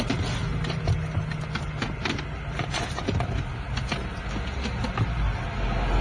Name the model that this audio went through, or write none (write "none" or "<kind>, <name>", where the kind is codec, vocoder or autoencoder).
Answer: none